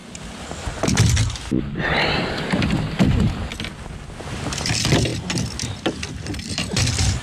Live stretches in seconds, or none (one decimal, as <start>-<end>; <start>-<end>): 0.0-7.2